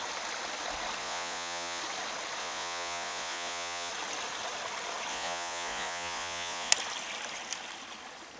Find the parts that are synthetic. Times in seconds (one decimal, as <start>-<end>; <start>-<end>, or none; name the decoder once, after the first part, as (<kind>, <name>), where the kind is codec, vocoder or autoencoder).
1.0-1.8 (vocoder, Vocos); 2.4-3.9; 5.1-6.7